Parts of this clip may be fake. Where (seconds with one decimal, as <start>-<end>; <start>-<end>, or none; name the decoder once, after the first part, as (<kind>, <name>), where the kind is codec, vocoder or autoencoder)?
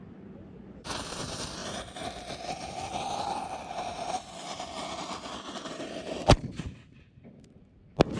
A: none